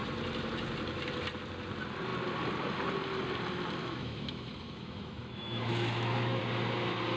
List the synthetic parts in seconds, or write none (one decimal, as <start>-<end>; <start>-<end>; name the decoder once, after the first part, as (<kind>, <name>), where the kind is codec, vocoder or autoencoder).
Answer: 3.8-6.4 (autoencoder, DAC-VAE)